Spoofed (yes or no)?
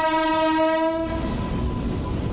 no